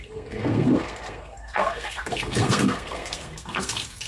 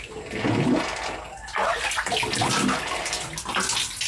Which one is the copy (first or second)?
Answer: first